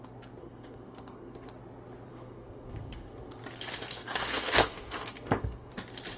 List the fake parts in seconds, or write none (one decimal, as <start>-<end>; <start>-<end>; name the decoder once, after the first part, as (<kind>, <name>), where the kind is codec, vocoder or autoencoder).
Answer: 0.4-1.5 (codec, SNAC); 2.1-3.4; 4.0-5.7